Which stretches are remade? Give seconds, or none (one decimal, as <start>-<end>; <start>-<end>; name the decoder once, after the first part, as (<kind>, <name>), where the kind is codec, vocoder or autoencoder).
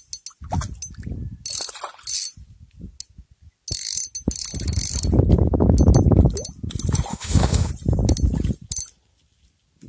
7.1-7.7 (autoencoder, DAC-VAE)